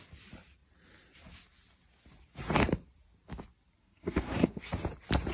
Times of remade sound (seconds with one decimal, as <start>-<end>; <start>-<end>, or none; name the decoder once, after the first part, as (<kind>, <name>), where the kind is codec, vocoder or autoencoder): 3.8-4.6 (codec, SNAC)